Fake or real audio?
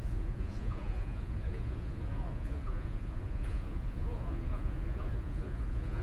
fake